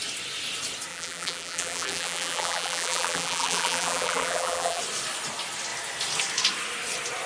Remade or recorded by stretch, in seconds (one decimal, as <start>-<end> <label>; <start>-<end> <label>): 0.0-0.9 recorded; 0.9-4.8 remade; 4.8-7.3 recorded